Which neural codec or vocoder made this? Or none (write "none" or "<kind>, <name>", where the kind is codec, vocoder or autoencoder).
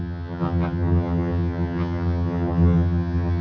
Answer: vocoder, HiFi-GAN